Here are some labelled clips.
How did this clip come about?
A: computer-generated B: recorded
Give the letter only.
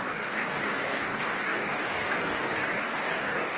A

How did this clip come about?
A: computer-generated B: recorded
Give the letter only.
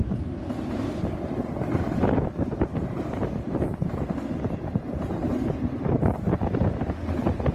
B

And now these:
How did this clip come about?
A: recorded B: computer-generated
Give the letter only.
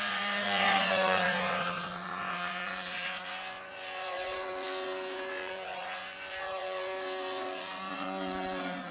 B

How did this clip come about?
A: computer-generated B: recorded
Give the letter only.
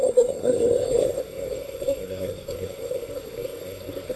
A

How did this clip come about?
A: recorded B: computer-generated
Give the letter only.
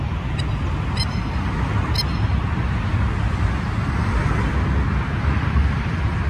A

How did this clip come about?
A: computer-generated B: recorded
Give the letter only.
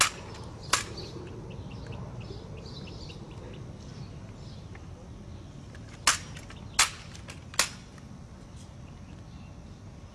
B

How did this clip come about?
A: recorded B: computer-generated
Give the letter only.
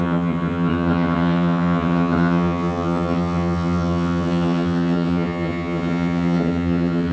B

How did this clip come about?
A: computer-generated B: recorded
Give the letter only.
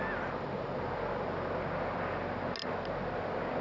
B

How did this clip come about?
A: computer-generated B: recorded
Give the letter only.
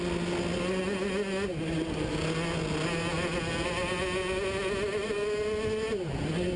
B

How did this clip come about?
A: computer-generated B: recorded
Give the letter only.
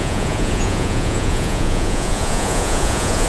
A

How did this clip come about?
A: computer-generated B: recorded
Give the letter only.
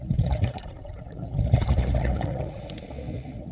A